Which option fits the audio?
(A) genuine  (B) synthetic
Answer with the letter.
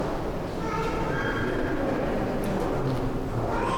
A